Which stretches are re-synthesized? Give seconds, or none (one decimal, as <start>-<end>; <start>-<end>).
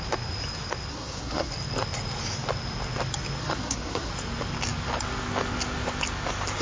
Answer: 0.9-1.5; 3.4-4.1